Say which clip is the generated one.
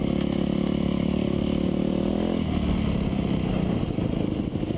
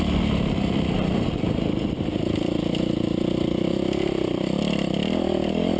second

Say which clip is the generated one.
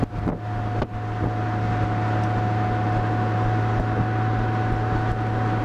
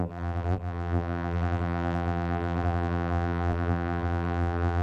second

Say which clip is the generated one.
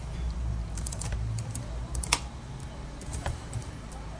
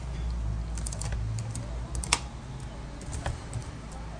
first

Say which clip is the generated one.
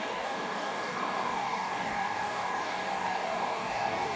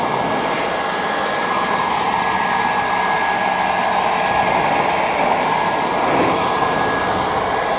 first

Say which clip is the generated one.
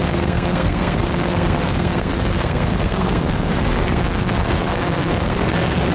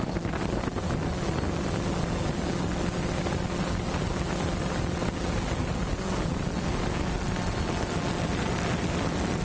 first